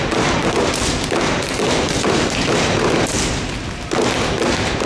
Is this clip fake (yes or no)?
no